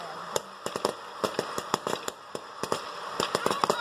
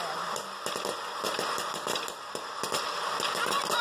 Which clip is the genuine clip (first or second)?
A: second